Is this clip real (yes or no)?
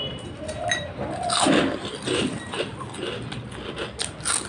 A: yes